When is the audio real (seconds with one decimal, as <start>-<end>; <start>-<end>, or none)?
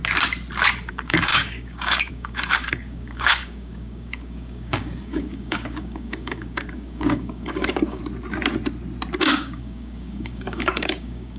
0.0-0.9; 8.0-9.2